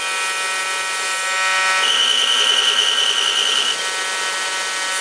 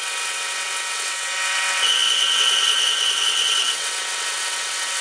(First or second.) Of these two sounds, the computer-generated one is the second